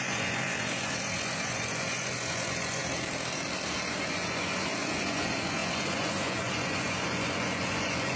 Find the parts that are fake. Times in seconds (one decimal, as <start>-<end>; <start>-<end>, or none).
0.0-2.8; 4.0-8.2

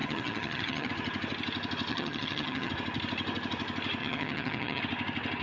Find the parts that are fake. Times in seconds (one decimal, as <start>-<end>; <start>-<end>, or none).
0.0-0.9; 1.9-2.7; 4.0-4.8